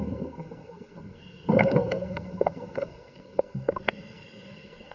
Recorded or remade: remade